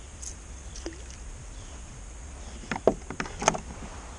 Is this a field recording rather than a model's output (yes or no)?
yes